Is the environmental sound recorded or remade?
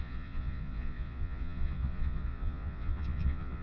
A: remade